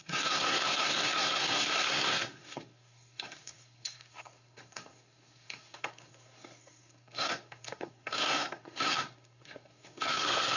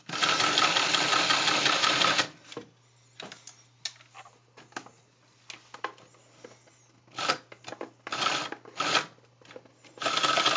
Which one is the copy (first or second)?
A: first